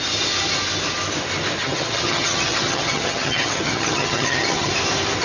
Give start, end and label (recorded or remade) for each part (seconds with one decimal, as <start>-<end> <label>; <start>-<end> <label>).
0.0-1.6 recorded; 1.6-4.7 remade; 4.7-5.2 recorded